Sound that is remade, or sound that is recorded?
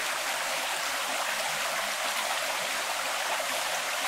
remade